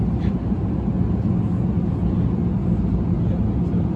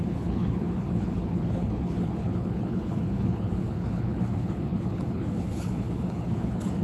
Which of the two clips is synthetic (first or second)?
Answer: second